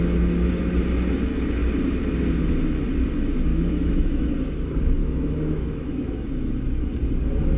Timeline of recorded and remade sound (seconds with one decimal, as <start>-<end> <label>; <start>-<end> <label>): 0.0-3.5 recorded; 3.5-4.3 remade; 4.3-5.0 recorded; 5.0-6.5 remade; 6.5-7.6 recorded